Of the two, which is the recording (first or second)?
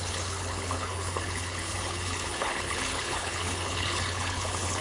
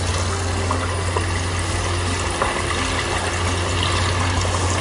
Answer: second